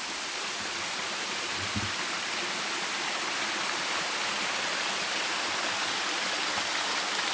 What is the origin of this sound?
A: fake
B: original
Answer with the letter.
B